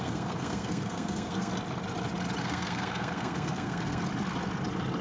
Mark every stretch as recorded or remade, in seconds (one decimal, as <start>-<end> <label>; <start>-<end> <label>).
0.0-1.5 remade; 1.5-2.4 recorded; 2.4-4.0 remade; 4.0-5.0 recorded